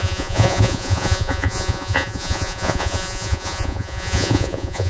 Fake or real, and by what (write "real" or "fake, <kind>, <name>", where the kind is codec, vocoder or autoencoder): fake, vocoder, Vocos